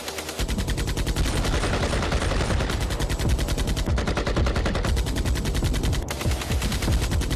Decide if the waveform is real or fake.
real